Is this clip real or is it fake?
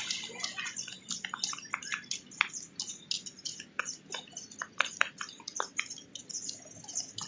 real